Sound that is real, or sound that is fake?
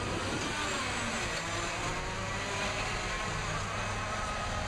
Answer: real